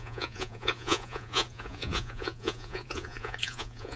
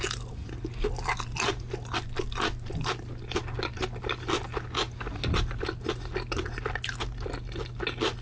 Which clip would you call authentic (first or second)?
second